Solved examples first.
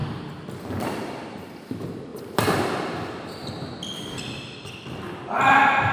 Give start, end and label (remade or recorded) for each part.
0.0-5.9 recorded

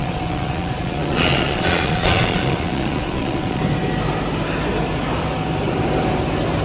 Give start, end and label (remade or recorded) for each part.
0.0-3.6 remade; 3.6-6.6 recorded

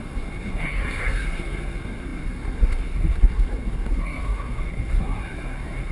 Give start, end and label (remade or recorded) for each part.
0.0-5.9 remade

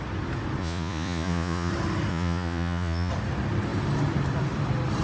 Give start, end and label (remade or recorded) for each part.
0.0-0.6 recorded; 0.6-1.7 remade; 1.7-2.1 recorded; 2.1-3.1 remade; 3.1-5.0 recorded